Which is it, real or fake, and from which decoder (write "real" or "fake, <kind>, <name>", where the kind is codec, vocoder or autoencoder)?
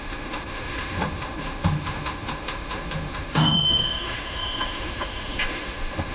fake, autoencoder, DAC-VAE